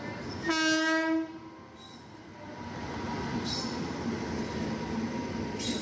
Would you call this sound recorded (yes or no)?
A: yes